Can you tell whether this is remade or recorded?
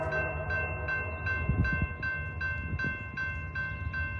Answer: recorded